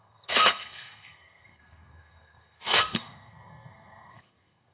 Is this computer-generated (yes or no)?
yes